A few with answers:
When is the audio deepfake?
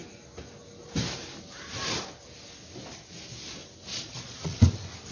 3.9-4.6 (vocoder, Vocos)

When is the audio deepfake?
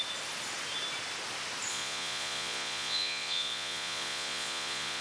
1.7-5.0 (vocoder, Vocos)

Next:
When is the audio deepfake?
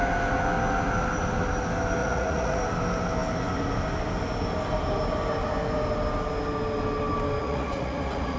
2.0-2.6 (vocoder, Vocos); 7.4-8.4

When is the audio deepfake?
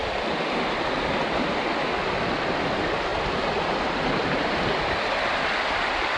none